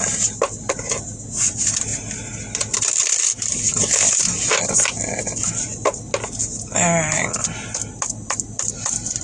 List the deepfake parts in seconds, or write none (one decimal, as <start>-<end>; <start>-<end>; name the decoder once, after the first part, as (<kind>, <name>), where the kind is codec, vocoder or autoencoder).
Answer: none